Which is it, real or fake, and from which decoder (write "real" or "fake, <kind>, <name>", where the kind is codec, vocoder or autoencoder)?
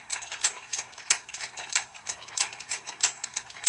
fake, codec, SNAC